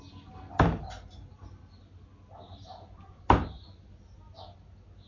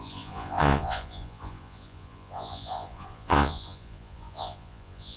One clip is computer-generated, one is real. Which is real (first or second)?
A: first